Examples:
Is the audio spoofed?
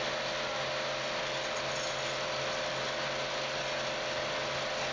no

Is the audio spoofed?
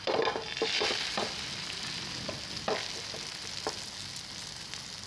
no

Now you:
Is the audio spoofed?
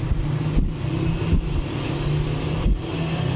no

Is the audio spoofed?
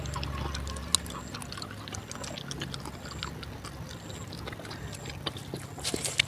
no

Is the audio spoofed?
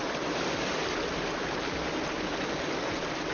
no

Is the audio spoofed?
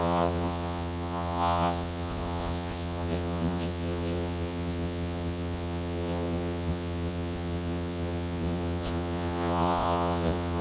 yes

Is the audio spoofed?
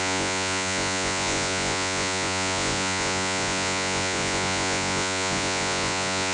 yes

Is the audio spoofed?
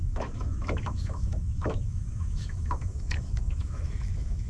yes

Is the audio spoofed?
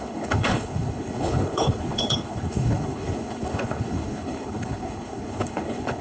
yes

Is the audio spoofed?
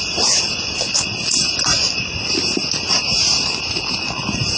yes